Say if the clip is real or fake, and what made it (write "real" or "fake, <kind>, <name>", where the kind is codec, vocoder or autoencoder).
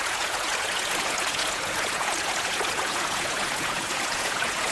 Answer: fake, vocoder, Vocos